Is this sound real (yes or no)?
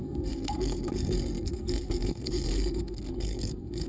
no